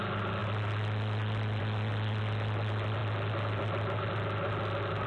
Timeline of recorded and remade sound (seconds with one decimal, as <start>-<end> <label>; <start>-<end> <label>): 0.0-5.1 recorded

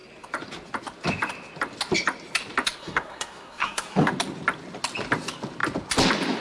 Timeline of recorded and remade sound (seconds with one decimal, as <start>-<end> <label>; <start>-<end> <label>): 0.0-2.8 recorded; 2.8-4.1 remade; 4.1-6.4 recorded

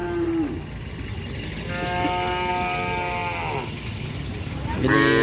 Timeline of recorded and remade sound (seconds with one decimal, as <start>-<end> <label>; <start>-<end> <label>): 0.0-5.2 recorded

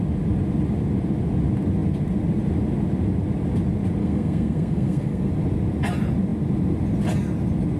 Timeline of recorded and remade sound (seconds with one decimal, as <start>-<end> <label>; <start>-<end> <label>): 0.0-4.0 recorded; 4.0-5.3 remade; 5.3-7.8 recorded

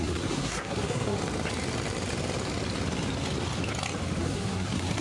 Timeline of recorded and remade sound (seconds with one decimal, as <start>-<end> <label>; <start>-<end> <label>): 0.0-1.2 remade; 1.2-4.2 recorded; 4.2-5.0 remade

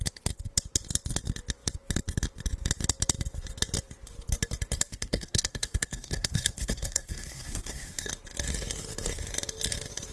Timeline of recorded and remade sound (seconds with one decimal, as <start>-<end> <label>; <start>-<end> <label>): 0.0-4.9 recorded; 4.9-8.1 remade; 8.1-10.1 recorded

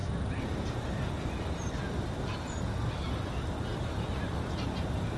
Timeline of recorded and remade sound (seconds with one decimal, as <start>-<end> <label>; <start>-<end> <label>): 0.0-3.7 recorded; 3.7-4.4 remade; 4.4-5.2 recorded